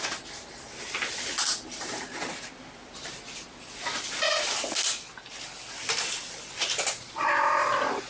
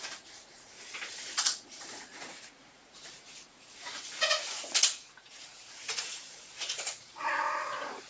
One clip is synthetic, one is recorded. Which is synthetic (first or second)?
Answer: second